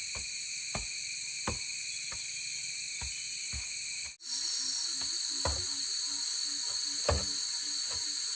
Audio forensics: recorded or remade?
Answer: recorded